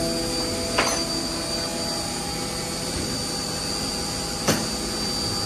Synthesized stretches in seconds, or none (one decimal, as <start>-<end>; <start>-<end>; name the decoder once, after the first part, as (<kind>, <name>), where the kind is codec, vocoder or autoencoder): none